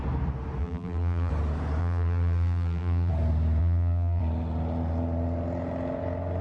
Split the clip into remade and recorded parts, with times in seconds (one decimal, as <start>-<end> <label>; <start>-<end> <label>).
0.0-0.6 recorded; 0.6-1.3 remade; 1.3-1.8 recorded; 1.8-3.1 remade; 3.1-3.6 recorded; 3.6-4.2 remade; 4.2-6.4 recorded